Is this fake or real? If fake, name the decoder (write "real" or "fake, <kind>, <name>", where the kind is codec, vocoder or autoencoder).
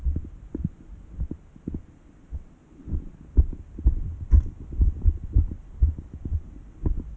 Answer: real